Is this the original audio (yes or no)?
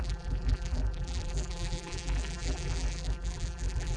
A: no